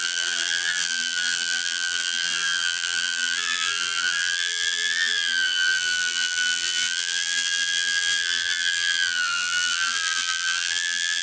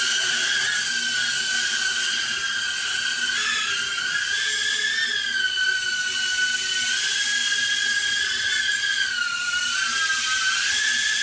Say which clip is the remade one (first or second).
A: first